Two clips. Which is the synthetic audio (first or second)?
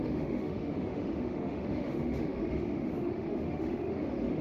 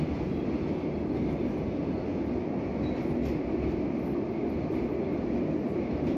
first